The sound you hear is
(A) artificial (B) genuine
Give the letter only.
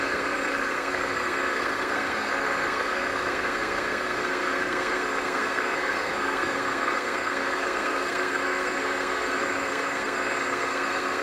A